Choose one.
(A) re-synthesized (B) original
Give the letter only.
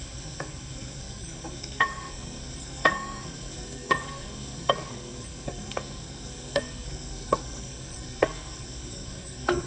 A